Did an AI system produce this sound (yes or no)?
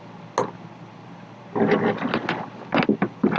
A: no